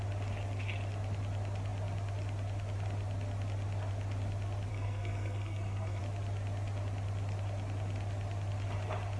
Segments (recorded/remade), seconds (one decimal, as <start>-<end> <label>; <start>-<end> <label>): 0.0-4.7 recorded; 4.7-6.0 remade; 6.0-9.2 recorded